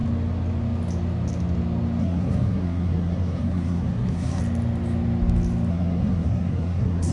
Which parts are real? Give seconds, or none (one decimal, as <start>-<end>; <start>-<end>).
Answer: 0.0-2.0; 4.4-5.7